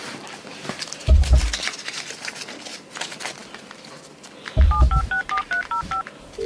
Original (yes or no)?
yes